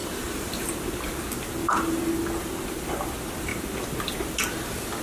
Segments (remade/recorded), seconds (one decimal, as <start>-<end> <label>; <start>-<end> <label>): 0.0-1.2 remade; 1.2-1.6 recorded; 1.6-2.1 remade; 2.1-5.0 recorded